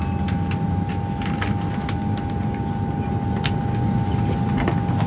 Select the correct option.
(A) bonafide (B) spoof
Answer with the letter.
A